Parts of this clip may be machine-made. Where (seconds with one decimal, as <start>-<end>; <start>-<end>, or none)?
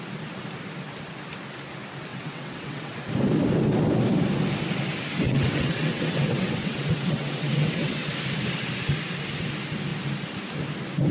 2.1-3.0; 5.1-8.1